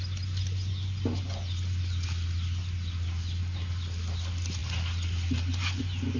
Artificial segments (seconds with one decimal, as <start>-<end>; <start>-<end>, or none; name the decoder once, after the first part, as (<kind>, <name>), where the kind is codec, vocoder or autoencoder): none